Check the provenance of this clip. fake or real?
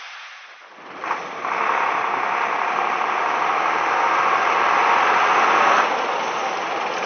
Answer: real